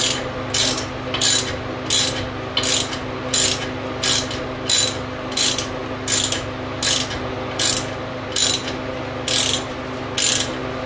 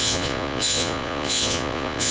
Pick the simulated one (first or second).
second